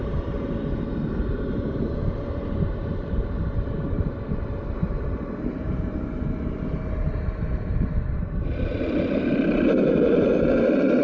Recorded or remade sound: remade